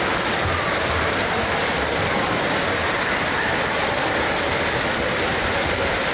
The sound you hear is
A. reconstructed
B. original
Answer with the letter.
B